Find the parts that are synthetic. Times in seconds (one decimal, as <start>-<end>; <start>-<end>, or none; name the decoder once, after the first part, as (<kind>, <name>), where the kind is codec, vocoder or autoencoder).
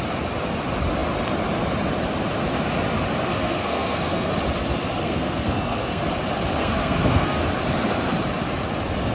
3.3-4.3 (codec, SNAC); 5.0-6.1; 6.6-7.4